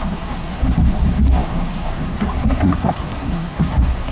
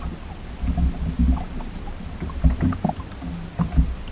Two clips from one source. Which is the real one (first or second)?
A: second